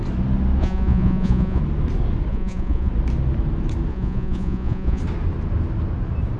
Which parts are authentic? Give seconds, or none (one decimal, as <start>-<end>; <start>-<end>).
0.0-0.6; 1.6-2.3; 2.9-3.9; 5.0-6.4